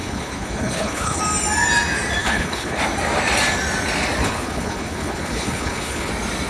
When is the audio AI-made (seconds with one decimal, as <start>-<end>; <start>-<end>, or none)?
0.0-1.2; 2.2-2.8; 4.2-6.1